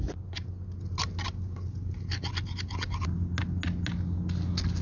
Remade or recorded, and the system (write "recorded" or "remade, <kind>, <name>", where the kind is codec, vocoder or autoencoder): recorded